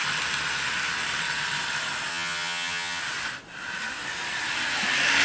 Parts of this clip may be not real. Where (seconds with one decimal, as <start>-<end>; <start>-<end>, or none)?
2.1-3.0